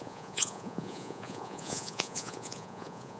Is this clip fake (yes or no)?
yes